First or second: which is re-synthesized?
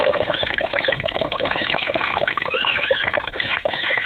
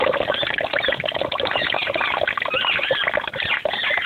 first